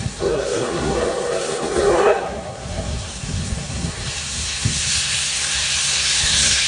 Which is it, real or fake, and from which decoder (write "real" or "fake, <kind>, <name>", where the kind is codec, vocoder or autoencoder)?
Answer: fake, codec, SNAC